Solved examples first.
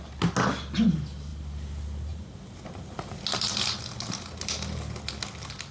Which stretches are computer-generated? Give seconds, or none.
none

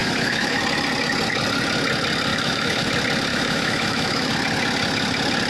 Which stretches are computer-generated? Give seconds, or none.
0.0-0.6 (autoencoder, DAC-VAE); 2.3-2.9; 3.3-4.3

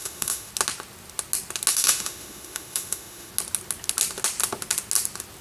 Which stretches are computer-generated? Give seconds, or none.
0.0-0.5 (autoencoder, DAC-VAE); 1.7-3.3

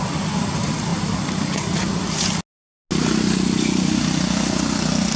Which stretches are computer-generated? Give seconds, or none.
none

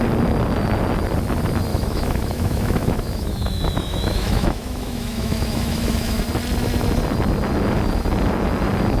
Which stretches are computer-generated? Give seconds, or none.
1.7-6.2 (autoencoder, DAC-VAE)